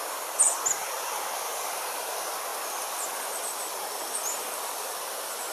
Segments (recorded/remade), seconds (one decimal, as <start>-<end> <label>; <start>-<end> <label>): 0.0-5.5 recorded